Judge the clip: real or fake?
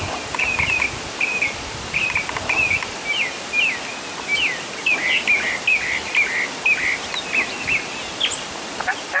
real